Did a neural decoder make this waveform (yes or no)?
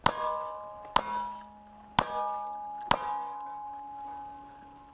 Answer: no